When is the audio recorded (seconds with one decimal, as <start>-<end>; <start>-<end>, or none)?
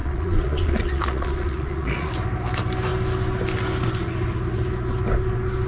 2.1-5.7